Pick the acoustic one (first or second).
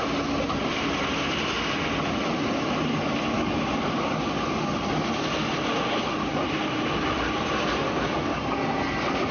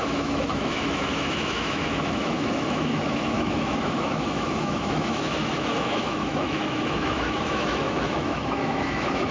first